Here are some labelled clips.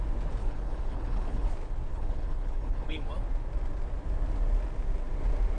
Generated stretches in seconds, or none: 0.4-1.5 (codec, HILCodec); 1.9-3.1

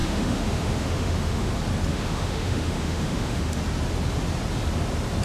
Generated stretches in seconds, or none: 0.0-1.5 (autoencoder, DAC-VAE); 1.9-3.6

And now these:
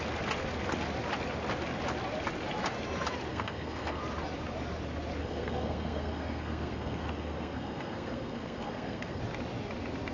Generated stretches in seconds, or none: 3.3-4.0 (codec, SNAC); 5.2-9.2